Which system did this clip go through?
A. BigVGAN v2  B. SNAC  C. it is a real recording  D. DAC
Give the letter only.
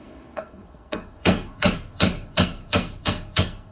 B